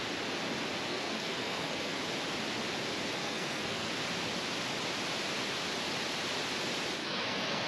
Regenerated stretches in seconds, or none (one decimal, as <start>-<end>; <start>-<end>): 0.9-2.0; 3.2-3.9; 7.0-7.7